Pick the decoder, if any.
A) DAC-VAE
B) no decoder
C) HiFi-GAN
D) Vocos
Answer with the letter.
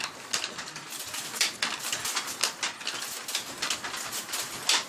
B